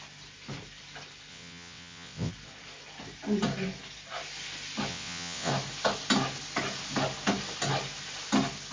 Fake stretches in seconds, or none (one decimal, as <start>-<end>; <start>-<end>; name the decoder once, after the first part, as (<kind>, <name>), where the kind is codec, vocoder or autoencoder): 1.3-2.3 (vocoder, WaveNeXt); 4.9-5.5